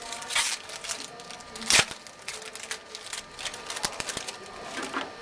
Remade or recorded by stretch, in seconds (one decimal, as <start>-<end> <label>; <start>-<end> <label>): 0.0-5.2 recorded